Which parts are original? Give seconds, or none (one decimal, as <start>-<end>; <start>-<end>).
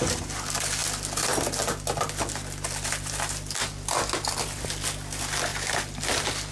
0.0-5.5; 6.0-6.5